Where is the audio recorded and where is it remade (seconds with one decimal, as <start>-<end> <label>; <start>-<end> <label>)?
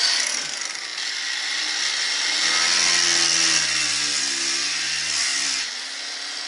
0.0-6.5 recorded